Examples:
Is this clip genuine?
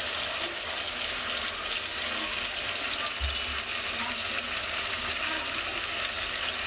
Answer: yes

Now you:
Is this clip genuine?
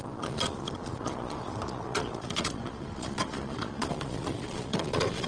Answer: no